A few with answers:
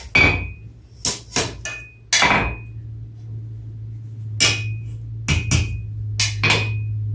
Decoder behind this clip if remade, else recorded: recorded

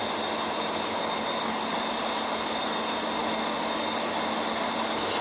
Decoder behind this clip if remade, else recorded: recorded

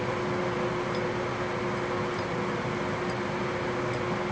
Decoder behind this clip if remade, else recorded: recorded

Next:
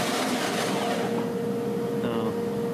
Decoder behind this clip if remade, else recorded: recorded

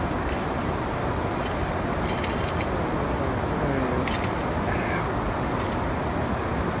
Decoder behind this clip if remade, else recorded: recorded